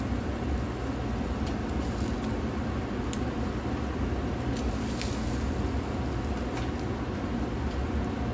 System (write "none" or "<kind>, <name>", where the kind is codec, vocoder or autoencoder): none